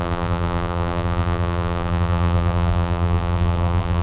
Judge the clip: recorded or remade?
remade